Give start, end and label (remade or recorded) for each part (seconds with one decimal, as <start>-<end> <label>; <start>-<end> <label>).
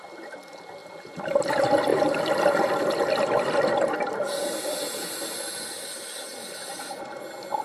0.0-7.6 recorded